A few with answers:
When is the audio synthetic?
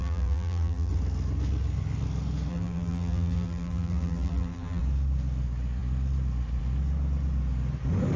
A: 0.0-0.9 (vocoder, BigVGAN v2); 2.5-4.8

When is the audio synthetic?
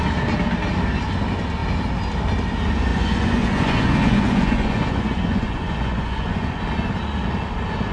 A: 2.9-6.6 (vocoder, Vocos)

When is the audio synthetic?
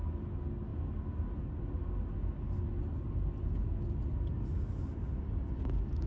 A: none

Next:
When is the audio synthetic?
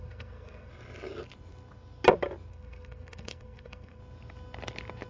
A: 0.0-0.7 (codec, SNAC); 2.5-4.0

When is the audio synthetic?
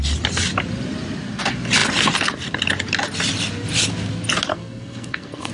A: 4.5-5.5 (codec, SNAC)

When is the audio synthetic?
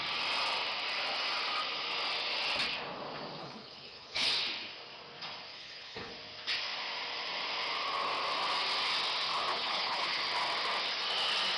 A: 3.4-4.3 (codec, HILCodec); 5.5-6.1; 9.5-10.2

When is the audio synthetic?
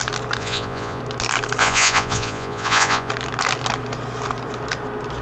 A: 0.4-1.0 (vocoder, Vocos); 1.6-3.1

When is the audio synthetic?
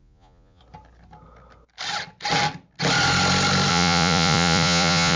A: 0.0-0.6 (vocoder, Vocos); 3.7-5.2